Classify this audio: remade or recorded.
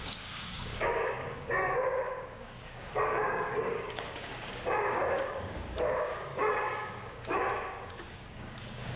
remade